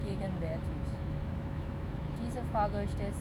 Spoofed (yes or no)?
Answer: yes